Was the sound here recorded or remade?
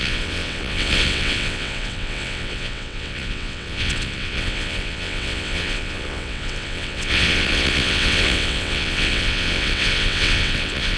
remade